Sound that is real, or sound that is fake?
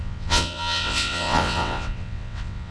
fake